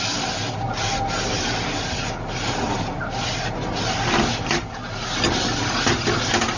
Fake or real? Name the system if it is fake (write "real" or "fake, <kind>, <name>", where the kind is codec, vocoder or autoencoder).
real